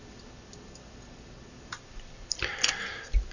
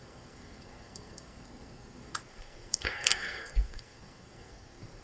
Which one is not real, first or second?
second